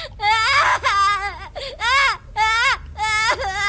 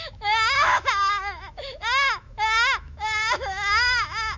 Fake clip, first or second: second